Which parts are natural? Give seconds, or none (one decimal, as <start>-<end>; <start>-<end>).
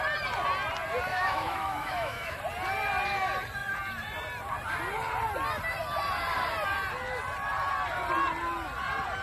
0.0-1.1; 2.4-9.2